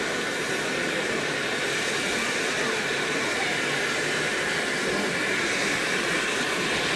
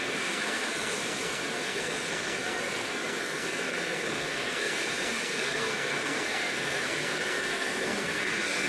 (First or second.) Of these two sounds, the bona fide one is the first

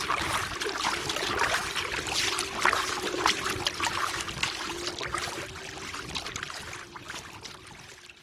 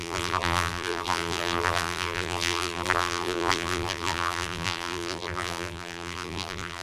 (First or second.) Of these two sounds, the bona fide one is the first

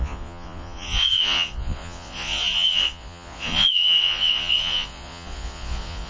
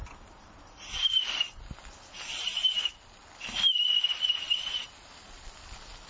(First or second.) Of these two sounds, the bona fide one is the second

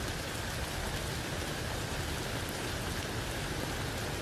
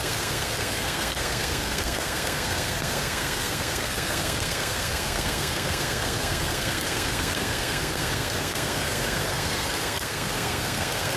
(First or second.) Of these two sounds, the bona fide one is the first